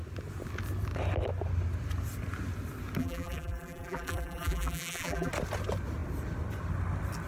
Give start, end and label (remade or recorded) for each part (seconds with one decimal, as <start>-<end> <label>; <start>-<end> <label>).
0.0-3.0 recorded; 3.0-5.3 remade; 5.3-7.3 recorded